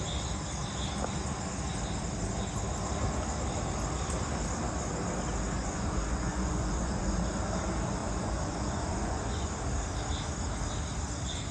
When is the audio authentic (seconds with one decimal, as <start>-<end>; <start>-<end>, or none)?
0.0-5.6; 7.2-8.0; 9.5-11.5